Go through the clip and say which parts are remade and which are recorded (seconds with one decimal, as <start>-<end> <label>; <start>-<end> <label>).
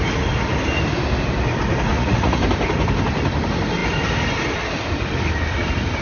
0.0-1.9 recorded; 1.9-2.4 remade; 2.4-6.0 recorded